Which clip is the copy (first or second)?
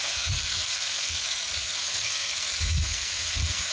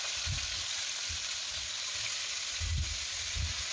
first